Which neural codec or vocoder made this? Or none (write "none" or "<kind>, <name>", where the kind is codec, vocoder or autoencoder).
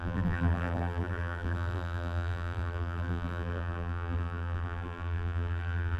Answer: vocoder, BigVGAN v2